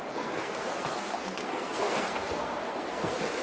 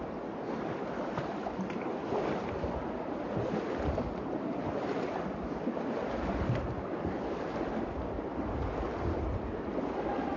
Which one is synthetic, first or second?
first